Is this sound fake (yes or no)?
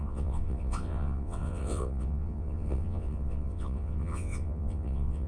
yes